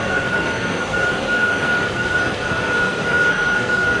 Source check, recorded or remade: remade